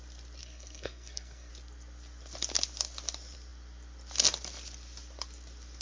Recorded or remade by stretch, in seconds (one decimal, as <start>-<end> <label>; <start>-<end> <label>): 0.0-0.4 recorded; 0.4-1.5 remade; 1.5-5.8 recorded